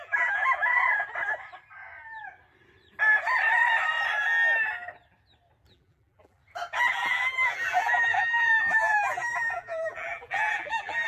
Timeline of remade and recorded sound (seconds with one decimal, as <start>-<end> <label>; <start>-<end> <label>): 0.0-0.9 remade; 0.9-5.7 recorded; 5.7-6.4 remade; 6.4-6.9 recorded; 6.9-11.1 remade